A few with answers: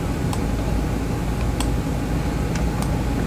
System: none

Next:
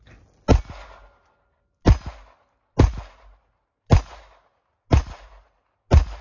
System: none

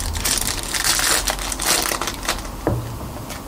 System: none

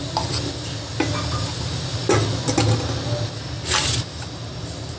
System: none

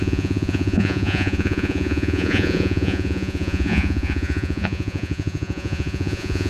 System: vocoder, Vocos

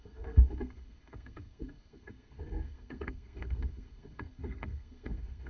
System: codec, SNAC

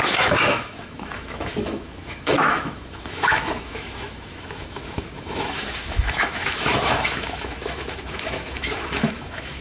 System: autoencoder, DAC-VAE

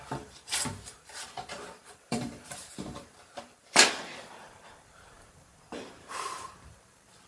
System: vocoder, BigVGAN v2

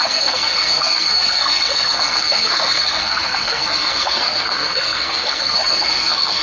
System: codec, SNAC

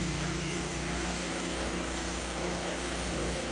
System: codec, DAC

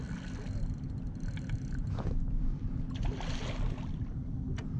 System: none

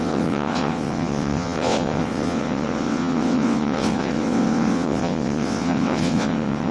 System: vocoder, WaveNeXt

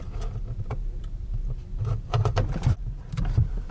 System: none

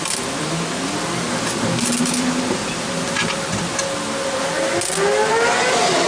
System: none